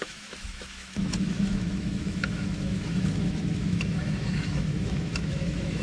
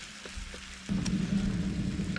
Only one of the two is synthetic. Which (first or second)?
first